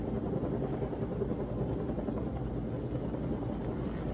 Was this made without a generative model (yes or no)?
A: yes